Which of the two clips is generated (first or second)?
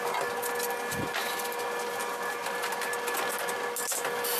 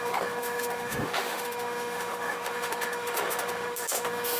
second